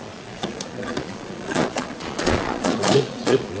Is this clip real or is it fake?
fake